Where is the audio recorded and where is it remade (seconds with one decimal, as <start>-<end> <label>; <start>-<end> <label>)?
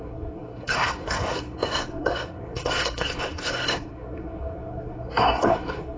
0.0-6.0 remade